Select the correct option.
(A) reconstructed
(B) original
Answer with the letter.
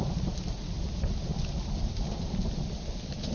B